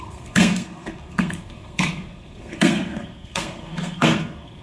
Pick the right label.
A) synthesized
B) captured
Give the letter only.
A